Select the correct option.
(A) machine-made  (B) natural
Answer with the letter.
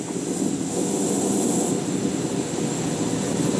B